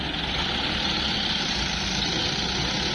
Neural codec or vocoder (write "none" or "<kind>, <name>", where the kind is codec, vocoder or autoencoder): none